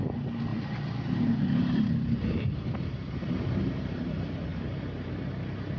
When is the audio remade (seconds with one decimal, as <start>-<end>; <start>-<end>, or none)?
0.5-4.0; 4.5-5.1